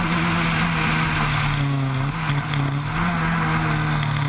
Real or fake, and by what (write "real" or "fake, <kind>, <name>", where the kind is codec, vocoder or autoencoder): real